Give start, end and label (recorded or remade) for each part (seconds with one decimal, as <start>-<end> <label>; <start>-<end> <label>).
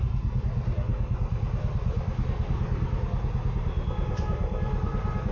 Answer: 0.0-5.3 recorded